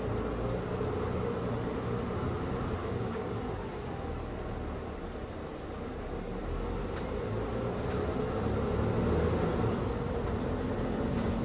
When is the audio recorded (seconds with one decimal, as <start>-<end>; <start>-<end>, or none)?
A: 0.0-2.8; 3.4-11.4